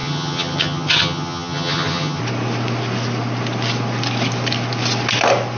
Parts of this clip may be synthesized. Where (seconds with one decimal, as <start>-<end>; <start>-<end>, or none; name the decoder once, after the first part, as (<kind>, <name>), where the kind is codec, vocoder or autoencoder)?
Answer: 0.0-2.2 (vocoder, HiFi-GAN)